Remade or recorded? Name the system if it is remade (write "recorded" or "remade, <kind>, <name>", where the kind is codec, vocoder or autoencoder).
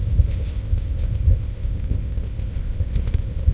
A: remade, codec, ZipCodec